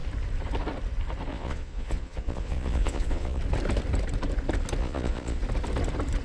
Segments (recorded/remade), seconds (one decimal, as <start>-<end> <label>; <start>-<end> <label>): 0.0-1.3 recorded; 1.3-3.4 remade; 3.4-4.8 recorded; 4.8-5.4 remade; 5.4-6.2 recorded